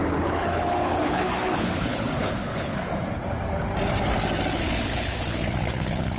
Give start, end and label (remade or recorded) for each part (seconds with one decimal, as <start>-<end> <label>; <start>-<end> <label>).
0.0-2.9 remade; 2.9-4.6 recorded; 4.6-6.2 remade